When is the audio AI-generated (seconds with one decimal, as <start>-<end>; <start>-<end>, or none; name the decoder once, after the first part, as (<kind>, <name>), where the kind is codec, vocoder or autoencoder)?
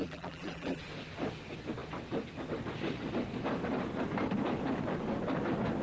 0.0-0.8 (vocoder, BigVGAN v2)